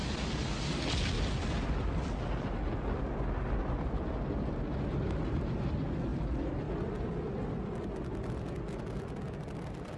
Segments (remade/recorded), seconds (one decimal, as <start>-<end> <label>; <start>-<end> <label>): 0.0-10.0 recorded

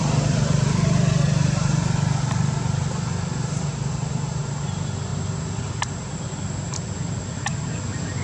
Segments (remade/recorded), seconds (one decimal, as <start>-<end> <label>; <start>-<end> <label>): 0.0-3.7 recorded; 3.7-4.5 remade; 4.5-5.1 recorded; 5.1-5.9 remade; 5.9-8.2 recorded

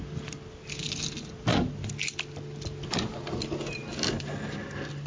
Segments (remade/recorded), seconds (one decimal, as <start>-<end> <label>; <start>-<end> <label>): 0.0-5.1 recorded

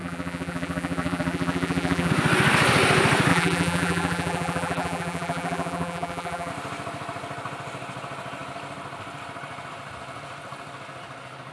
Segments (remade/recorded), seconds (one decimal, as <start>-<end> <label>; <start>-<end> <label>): 0.0-2.1 remade; 2.1-3.3 recorded; 3.3-6.5 remade; 6.5-11.5 recorded

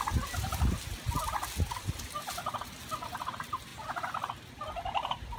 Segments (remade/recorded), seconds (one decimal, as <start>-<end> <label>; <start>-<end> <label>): 0.0-5.4 recorded

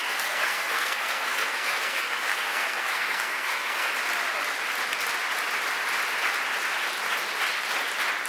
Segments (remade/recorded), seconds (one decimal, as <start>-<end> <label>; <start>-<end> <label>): 0.0-3.9 remade; 3.9-8.3 recorded

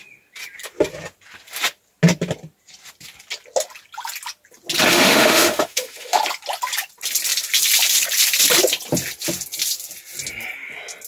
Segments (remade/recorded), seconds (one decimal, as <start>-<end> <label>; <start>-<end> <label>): 0.0-4.9 recorded; 4.9-6.2 remade; 6.2-11.1 recorded

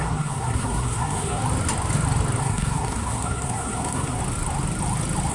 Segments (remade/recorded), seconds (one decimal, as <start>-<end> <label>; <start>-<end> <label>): 0.0-1.4 remade; 1.4-2.4 recorded; 2.4-4.2 remade; 4.2-5.3 recorded